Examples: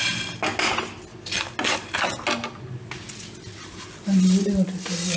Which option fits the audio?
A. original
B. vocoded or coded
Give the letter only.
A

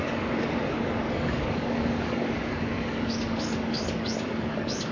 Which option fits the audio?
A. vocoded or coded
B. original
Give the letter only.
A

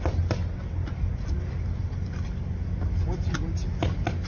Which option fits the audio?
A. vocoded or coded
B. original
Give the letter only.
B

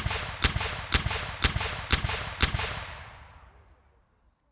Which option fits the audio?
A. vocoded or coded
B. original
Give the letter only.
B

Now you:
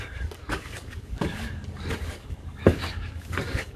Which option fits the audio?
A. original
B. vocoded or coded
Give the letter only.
B